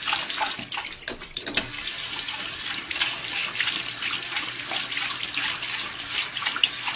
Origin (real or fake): real